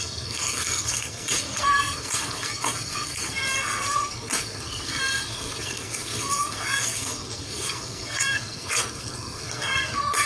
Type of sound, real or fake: fake